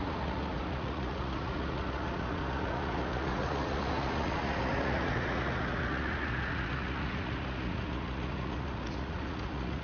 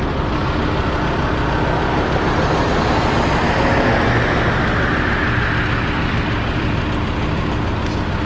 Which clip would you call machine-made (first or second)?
first